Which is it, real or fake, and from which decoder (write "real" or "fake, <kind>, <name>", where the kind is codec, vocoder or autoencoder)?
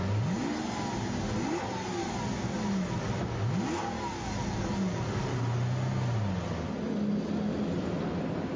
real